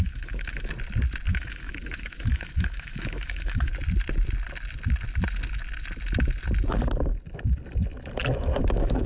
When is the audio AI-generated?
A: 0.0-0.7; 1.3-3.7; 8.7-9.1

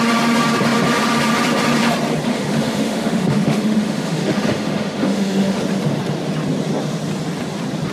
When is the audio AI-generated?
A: 2.3-5.6

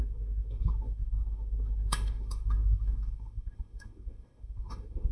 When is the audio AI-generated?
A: 0.0-5.1

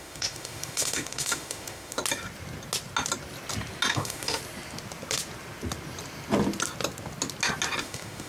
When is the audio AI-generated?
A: 0.0-2.0; 3.9-4.4; 7.8-8.3

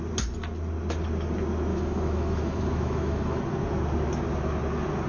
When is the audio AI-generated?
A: 1.7-3.4